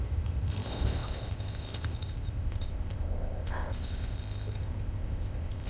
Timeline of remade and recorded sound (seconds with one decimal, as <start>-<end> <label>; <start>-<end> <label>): 0.0-5.7 remade